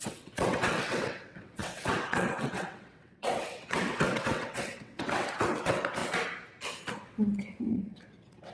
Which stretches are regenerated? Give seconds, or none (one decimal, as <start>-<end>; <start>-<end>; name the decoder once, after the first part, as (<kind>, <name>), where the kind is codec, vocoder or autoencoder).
0.0-6.0 (vocoder, WaveNeXt); 6.9-8.5